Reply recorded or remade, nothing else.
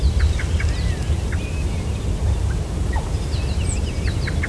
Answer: remade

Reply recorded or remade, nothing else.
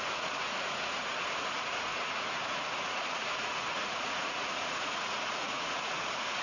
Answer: remade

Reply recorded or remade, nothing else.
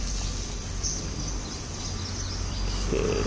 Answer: recorded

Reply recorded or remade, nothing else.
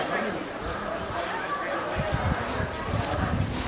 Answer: recorded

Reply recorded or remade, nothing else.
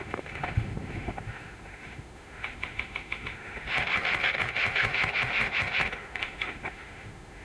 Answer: remade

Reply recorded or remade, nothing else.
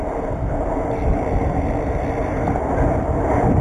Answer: remade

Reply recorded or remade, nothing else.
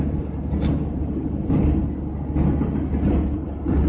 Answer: recorded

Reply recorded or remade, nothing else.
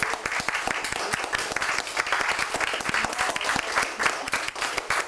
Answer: recorded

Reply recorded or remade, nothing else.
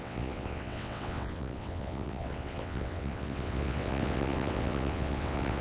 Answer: remade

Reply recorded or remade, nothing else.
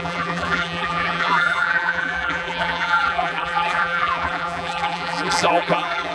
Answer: remade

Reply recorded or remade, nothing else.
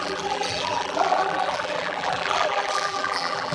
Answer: remade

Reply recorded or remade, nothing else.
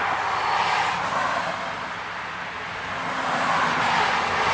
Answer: recorded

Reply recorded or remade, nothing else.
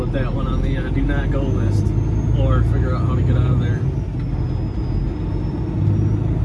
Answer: recorded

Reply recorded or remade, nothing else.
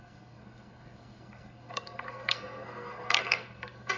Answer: remade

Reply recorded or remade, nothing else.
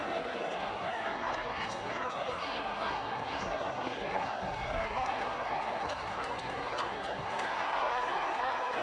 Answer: remade